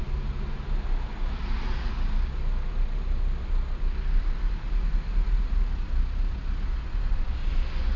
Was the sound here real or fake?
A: real